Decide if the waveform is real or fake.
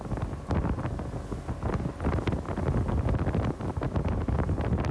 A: real